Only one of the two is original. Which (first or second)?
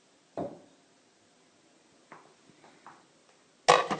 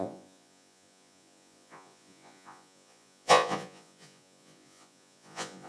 first